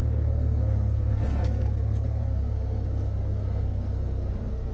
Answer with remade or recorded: remade